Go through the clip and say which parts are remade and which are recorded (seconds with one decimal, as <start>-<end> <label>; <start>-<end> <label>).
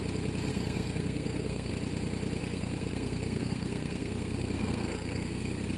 0.0-0.5 recorded; 0.5-1.7 remade; 1.7-2.4 recorded; 2.4-5.8 remade